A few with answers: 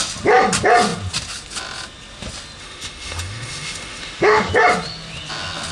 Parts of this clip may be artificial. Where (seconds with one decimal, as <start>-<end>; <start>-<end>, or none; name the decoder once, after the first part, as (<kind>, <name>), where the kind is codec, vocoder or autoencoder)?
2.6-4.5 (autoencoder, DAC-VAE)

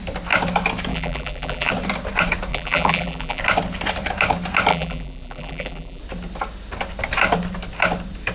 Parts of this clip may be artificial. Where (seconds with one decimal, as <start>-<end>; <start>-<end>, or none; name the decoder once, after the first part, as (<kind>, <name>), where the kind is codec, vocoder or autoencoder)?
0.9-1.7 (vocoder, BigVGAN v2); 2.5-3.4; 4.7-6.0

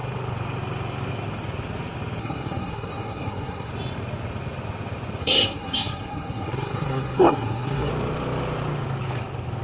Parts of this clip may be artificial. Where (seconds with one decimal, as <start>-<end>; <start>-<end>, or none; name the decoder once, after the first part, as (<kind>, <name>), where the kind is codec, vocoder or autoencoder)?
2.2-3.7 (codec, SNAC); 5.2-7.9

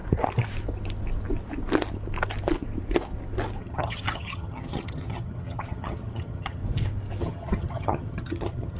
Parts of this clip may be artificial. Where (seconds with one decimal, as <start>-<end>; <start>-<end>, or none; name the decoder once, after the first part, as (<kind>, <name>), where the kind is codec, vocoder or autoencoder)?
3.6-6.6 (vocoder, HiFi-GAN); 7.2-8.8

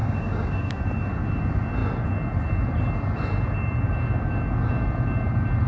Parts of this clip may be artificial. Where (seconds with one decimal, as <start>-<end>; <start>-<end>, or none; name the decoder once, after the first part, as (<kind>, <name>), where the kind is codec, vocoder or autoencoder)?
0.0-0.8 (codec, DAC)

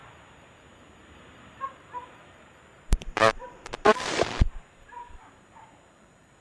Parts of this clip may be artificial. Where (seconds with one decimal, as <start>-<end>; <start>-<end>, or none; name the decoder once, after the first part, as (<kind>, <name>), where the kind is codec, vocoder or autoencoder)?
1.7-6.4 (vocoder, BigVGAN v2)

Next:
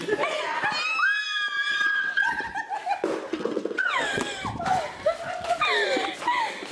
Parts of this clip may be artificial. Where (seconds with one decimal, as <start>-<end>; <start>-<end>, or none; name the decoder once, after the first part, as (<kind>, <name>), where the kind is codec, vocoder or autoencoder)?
1.7-2.4 (vocoder, WaveNeXt); 3.3-4.2